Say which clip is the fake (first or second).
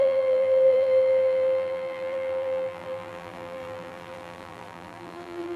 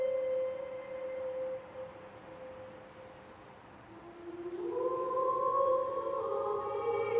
first